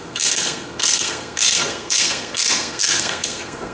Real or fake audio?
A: fake